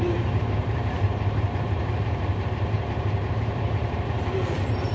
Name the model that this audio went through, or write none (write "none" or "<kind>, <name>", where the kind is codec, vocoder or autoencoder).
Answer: vocoder, BigVGAN v2